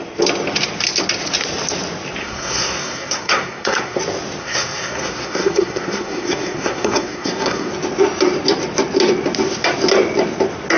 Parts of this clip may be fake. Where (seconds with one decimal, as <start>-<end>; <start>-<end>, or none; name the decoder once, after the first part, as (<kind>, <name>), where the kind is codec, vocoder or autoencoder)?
2.2-4.0 (codec, SNAC); 4.4-7.7